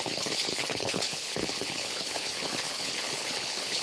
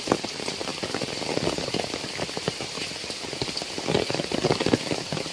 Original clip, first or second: second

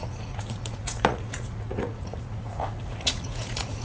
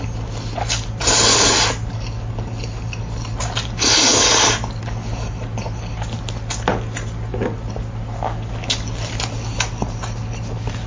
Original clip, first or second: second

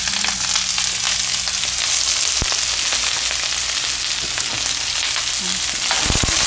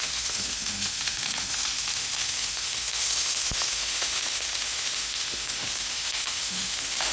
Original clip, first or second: first